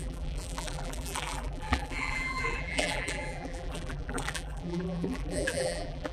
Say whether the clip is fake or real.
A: fake